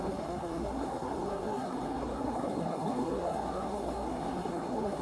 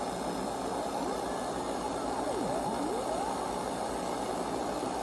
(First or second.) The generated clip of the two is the first